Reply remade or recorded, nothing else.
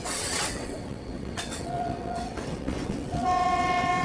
remade